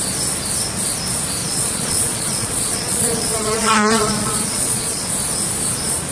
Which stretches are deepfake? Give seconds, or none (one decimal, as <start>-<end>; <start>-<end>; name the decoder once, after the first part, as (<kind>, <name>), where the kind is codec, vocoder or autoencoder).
1.4-5.1 (vocoder, Vocos)